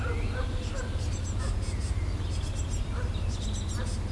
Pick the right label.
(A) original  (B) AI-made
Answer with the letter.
A